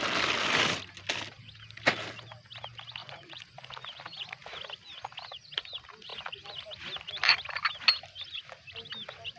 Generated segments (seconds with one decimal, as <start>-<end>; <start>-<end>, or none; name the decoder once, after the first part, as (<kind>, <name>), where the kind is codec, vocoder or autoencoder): 3.0-3.5 (vocoder, Vocos)